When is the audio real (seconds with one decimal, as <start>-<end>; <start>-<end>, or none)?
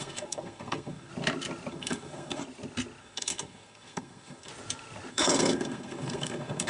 1.1-1.7; 2.4-3.0; 4.5-5.1